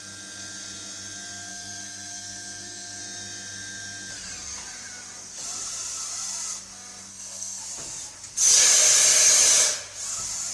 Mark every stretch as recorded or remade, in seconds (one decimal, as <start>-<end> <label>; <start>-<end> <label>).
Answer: 0.0-1.5 recorded; 1.5-3.0 remade; 3.0-7.1 recorded; 7.1-7.6 remade; 7.6-10.5 recorded